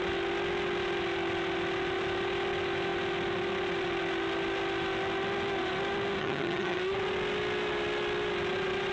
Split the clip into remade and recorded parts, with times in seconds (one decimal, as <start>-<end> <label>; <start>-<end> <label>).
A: 0.0-6.2 recorded; 6.2-6.8 remade; 6.8-8.9 recorded